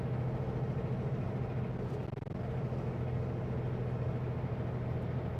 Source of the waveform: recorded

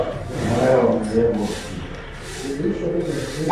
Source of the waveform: remade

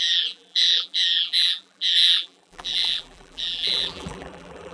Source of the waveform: remade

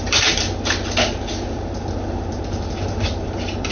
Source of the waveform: remade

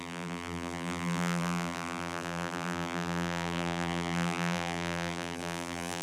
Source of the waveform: remade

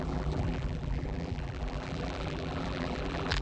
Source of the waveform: remade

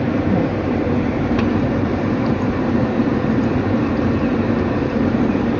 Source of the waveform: remade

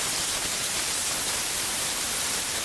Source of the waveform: remade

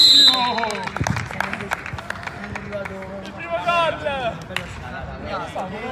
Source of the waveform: recorded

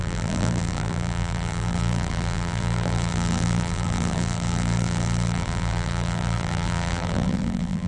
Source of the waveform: remade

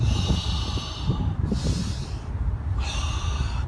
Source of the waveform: remade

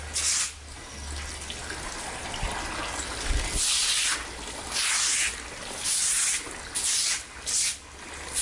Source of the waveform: recorded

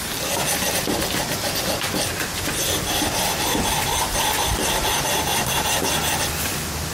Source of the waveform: recorded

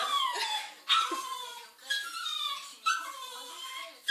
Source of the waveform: recorded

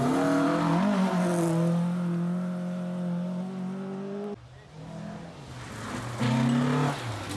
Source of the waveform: recorded